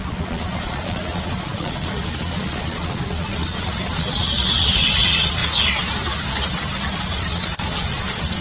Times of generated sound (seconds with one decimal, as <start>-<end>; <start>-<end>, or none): 0.0-5.4; 7.0-8.4